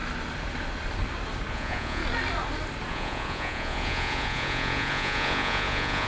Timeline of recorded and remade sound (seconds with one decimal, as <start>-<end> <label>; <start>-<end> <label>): 0.0-1.5 recorded; 1.5-2.0 remade; 2.0-2.9 recorded; 2.9-6.1 remade